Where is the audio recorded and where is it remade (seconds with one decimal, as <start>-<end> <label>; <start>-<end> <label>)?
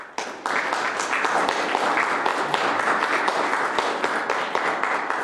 0.0-5.2 recorded